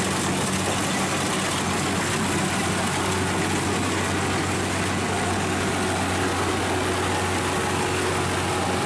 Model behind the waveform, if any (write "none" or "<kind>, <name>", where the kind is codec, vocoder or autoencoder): none